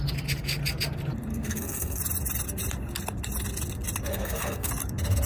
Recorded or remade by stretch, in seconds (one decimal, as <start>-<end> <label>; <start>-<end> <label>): 0.0-1.3 recorded; 1.3-2.0 remade; 2.0-4.1 recorded; 4.1-4.7 remade; 4.7-5.2 recorded